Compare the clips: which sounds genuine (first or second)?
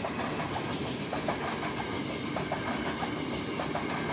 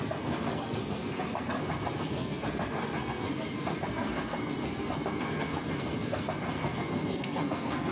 first